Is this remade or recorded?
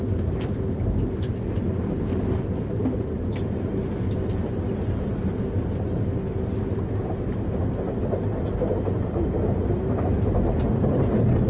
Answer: recorded